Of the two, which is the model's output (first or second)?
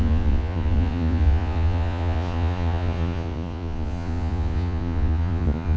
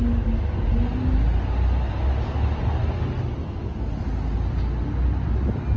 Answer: first